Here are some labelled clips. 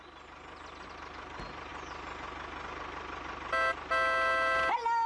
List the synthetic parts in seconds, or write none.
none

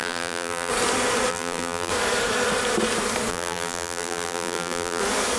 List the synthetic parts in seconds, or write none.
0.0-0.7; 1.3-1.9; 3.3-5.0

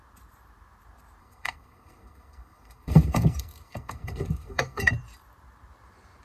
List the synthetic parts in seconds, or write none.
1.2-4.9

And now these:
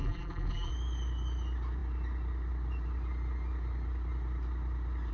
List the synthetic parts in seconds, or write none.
0.0-0.7

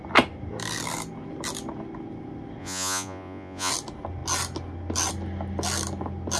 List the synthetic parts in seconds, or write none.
2.6-3.7